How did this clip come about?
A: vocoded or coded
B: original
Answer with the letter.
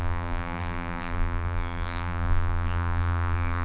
A